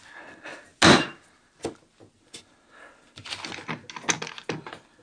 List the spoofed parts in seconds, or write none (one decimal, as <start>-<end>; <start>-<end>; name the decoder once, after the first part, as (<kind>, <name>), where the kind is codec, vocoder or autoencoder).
none

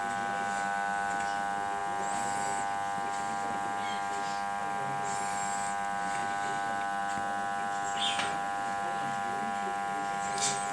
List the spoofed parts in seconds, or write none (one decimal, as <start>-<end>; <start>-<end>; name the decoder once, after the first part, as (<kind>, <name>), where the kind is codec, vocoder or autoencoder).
none

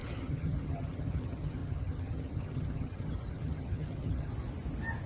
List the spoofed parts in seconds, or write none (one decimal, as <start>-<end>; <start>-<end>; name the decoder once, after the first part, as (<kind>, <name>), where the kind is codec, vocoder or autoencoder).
0.0-4.3 (vocoder, HiFi-GAN)

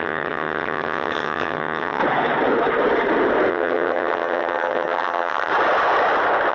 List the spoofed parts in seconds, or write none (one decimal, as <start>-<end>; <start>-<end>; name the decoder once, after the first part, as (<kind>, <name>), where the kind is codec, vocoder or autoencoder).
0.0-2.0 (vocoder, HiFi-GAN); 3.5-5.5

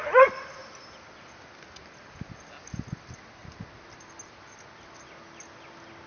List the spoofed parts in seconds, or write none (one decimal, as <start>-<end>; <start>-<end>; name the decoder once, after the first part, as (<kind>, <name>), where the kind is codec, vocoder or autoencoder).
none

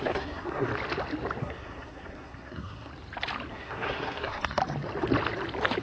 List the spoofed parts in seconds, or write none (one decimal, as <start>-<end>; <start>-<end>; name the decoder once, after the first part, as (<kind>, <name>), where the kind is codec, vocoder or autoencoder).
0.0-0.7 (codec, SNAC); 1.4-2.9; 3.5-4.6